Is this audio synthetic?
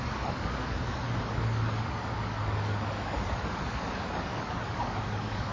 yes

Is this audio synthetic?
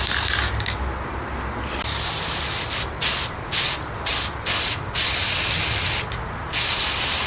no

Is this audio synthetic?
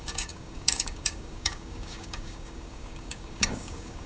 yes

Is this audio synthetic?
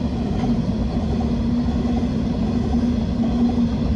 no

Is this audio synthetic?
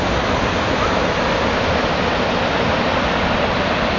no